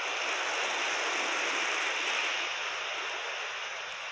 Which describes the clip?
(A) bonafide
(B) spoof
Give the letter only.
A